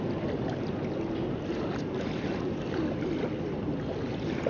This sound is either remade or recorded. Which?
recorded